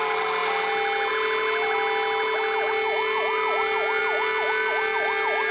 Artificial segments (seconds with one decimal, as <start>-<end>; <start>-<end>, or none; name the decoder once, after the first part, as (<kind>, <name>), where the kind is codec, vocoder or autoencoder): none